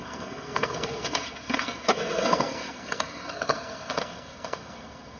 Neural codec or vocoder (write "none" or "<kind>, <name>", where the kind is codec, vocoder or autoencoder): codec, SNAC